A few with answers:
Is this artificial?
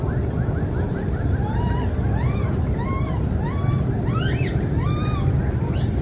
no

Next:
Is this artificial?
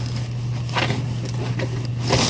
no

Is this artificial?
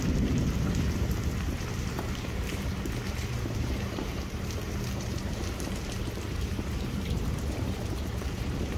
yes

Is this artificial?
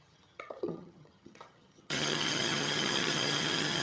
yes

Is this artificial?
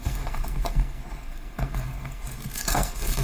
yes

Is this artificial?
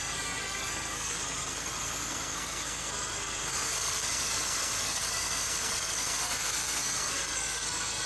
yes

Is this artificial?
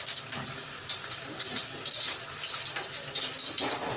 no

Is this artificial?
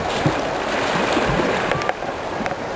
no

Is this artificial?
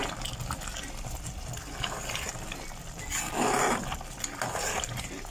no